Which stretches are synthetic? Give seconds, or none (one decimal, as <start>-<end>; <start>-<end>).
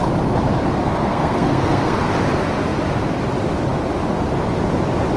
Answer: 0.8-2.1